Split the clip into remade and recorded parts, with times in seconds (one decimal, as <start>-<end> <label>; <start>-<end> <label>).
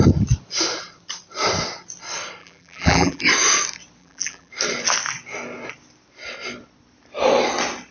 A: 0.0-2.4 recorded; 2.4-3.2 remade; 3.2-4.0 recorded; 4.0-4.5 remade; 4.5-7.9 recorded